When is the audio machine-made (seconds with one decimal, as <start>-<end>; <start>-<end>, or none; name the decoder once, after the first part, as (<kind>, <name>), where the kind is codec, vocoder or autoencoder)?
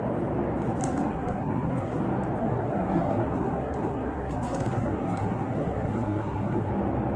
0.8-2.0 (codec, SNAC); 2.4-6.7